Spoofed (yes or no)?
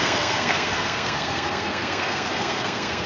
yes